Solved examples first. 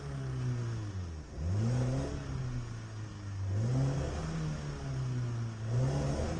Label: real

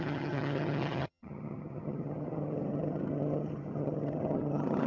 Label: fake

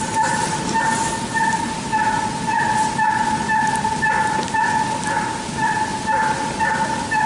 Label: real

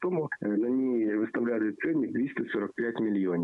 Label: real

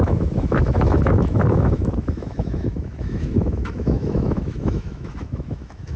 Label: fake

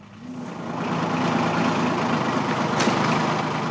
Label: real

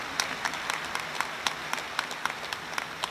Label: real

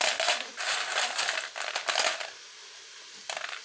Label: real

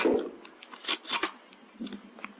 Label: real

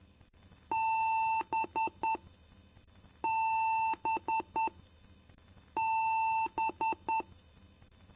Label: real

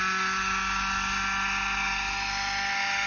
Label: real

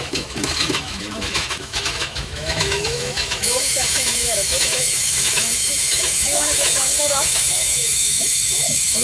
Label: fake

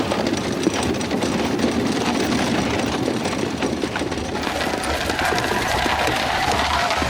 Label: real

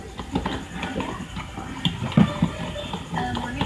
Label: real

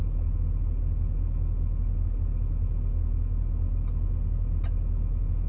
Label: real